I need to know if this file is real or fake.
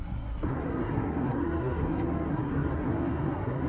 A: fake